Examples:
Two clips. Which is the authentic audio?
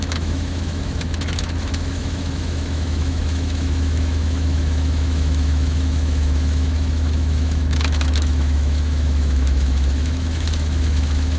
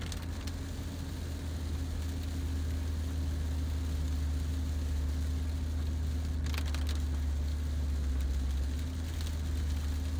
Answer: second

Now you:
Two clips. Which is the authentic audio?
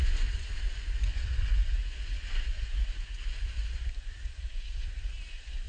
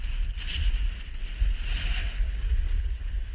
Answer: second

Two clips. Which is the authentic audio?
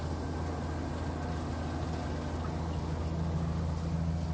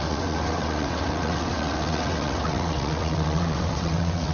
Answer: first